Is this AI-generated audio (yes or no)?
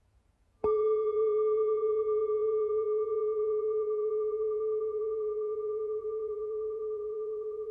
yes